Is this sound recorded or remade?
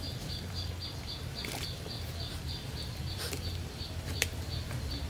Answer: remade